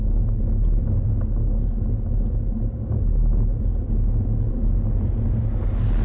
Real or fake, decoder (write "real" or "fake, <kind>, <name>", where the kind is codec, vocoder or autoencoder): real